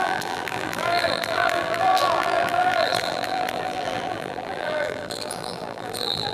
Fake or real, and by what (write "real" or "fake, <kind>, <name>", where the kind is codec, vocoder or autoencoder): fake, vocoder, BigVGAN v2